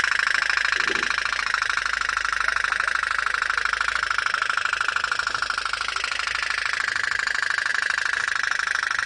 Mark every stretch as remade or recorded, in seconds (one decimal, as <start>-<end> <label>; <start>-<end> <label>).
0.0-9.1 recorded